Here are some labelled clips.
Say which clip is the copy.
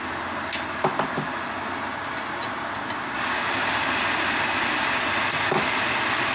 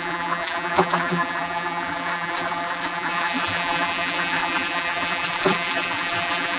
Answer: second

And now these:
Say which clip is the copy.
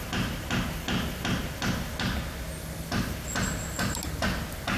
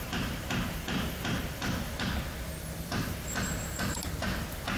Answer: second